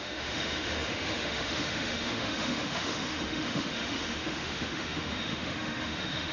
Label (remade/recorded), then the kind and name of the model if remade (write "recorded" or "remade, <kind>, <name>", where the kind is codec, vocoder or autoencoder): remade, autoencoder, DAC-VAE